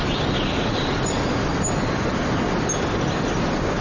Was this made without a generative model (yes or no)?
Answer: yes